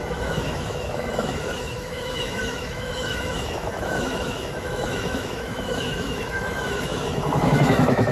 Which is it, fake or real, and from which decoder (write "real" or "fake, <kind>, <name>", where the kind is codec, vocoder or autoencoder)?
fake, autoencoder, DAC-VAE